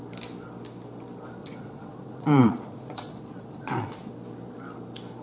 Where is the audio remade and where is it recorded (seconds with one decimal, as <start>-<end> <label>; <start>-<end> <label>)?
0.0-1.4 recorded; 1.4-4.1 remade; 4.1-5.2 recorded